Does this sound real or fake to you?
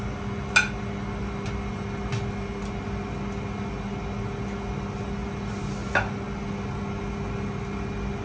real